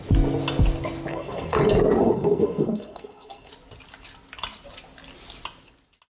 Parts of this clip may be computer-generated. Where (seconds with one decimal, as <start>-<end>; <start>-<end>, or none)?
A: 1.1-1.6; 2.0-3.5